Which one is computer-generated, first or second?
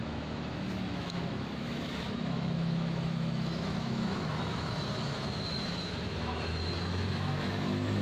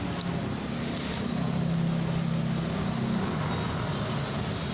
first